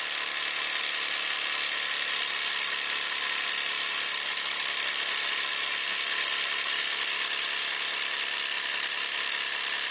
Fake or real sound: real